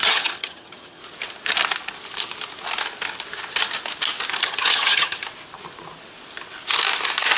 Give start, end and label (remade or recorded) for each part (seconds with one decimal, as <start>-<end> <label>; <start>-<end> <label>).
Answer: 0.0-1.0 remade; 1.0-4.4 recorded; 4.4-5.2 remade; 5.2-7.4 recorded